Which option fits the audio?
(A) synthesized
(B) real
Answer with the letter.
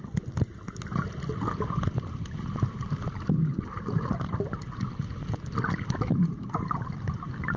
B